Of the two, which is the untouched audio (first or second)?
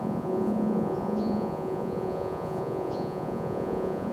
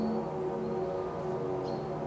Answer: second